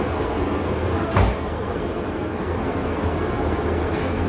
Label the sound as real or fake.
fake